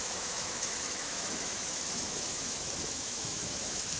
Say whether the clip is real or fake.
fake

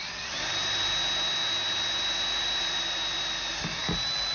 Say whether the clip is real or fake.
real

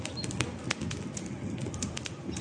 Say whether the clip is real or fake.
real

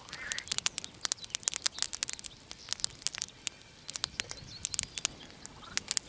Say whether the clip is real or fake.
real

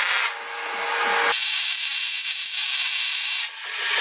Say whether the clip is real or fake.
real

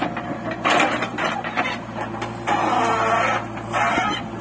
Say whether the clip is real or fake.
real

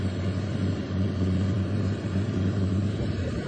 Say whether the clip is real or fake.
real